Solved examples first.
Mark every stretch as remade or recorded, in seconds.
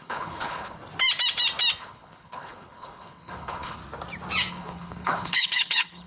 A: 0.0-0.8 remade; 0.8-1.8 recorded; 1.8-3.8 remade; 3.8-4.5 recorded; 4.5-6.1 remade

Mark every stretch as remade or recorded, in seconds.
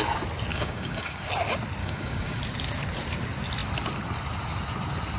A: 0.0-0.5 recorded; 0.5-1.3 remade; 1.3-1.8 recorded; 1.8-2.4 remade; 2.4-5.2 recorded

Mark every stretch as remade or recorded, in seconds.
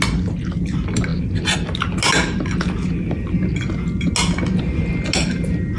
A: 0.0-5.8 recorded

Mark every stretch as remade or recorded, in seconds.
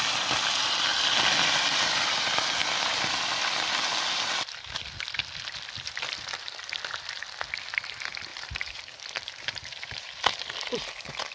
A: 0.0-8.3 recorded; 8.3-10.4 remade; 10.4-11.3 recorded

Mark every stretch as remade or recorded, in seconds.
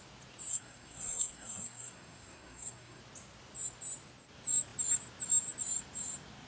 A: 0.0-0.5 recorded; 0.5-3.0 remade; 3.0-6.5 recorded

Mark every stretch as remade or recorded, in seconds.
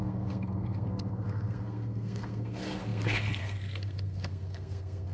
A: 0.0-5.1 remade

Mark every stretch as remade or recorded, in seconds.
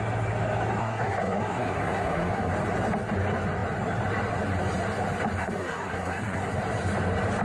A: 0.0-0.8 recorded; 0.8-2.5 remade; 2.5-5.4 recorded; 5.4-6.5 remade; 6.5-7.4 recorded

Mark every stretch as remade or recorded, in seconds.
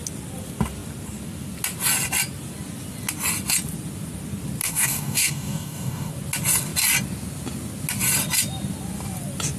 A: 0.0-4.6 recorded; 4.6-6.1 remade; 6.1-9.6 recorded